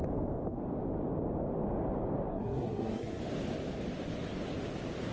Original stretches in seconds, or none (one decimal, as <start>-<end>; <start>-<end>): 0.0-2.3; 3.2-5.1